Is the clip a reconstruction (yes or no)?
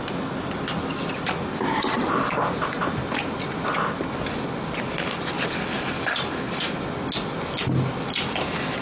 no